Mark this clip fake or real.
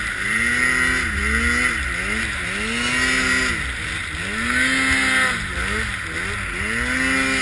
real